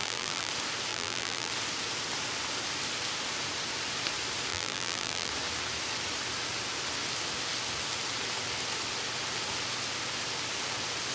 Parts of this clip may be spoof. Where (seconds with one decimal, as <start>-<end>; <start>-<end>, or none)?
0.0-0.5; 0.9-1.5; 4.5-5.3